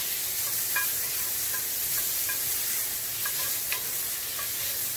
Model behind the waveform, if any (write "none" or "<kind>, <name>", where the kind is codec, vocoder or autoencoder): none